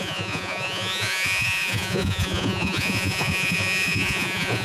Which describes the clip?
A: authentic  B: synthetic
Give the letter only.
B